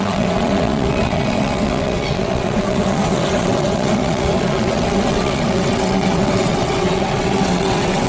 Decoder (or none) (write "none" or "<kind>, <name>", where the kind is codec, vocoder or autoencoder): vocoder, WaveNeXt